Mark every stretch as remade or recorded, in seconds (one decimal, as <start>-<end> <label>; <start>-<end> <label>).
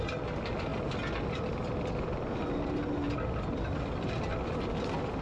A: 0.0-5.2 recorded